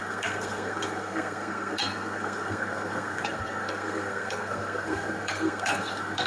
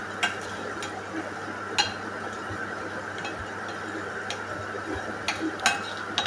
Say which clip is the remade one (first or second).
first